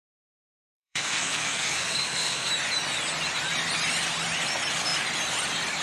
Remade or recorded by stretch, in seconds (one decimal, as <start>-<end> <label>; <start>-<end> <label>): 0.0-2.5 remade; 2.5-5.8 recorded